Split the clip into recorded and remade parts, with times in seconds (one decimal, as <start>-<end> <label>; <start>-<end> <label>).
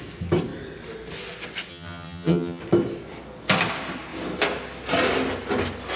0.0-1.7 recorded; 1.7-2.6 remade; 2.6-6.0 recorded